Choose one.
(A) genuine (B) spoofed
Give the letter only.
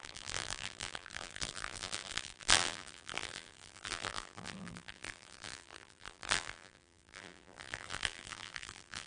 B